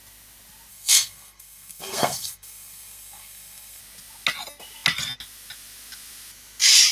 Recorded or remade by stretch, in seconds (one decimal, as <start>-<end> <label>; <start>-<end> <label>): 0.0-0.7 recorded; 0.7-3.8 remade; 3.8-6.9 recorded